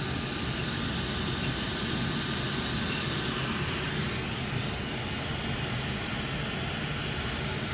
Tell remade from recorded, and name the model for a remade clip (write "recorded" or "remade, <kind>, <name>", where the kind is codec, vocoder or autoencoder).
recorded